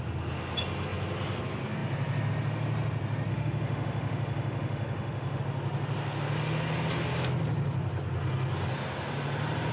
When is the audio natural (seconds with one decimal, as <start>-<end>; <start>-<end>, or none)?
0.0-3.3; 5.4-9.7